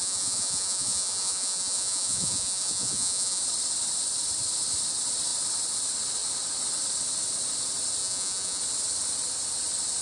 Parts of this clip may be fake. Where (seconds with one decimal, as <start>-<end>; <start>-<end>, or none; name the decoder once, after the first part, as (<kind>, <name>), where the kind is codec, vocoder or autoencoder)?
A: 0.0-3.4 (vocoder, Vocos); 8.0-8.6